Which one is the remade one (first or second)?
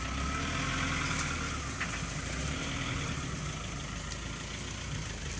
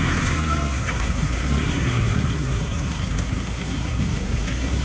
second